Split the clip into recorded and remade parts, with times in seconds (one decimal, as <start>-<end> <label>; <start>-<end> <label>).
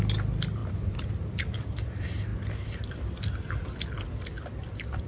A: 0.0-5.1 recorded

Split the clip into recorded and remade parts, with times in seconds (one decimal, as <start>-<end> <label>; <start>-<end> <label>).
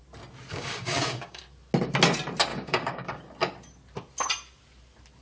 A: 0.0-0.5 recorded; 0.5-1.4 remade; 1.4-2.5 recorded; 2.5-3.2 remade; 3.2-5.2 recorded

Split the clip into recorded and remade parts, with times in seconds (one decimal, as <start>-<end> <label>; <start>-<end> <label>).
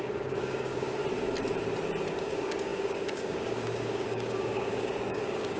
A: 0.0-1.0 remade; 1.0-2.2 recorded; 2.2-5.6 remade